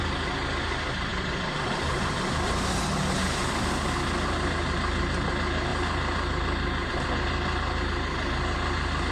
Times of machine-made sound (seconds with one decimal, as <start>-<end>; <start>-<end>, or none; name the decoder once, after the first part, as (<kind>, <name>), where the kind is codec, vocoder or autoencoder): none